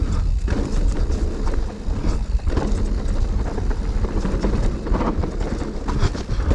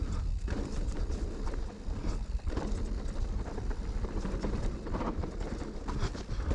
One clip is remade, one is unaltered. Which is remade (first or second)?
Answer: second